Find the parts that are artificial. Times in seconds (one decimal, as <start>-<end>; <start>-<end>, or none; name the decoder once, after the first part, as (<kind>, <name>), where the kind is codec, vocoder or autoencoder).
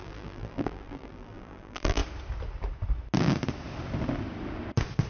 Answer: 0.0-2.0 (vocoder, BigVGAN v2)